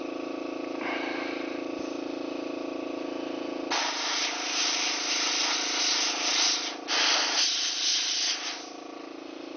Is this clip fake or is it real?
real